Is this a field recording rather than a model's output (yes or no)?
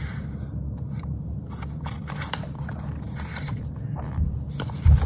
no